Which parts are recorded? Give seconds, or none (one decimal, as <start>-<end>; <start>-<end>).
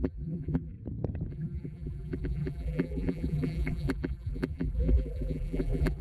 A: 0.7-1.3